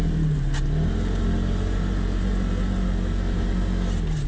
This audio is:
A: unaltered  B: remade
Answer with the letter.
A